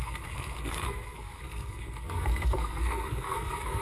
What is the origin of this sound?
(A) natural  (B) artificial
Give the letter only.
B